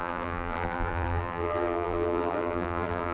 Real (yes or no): no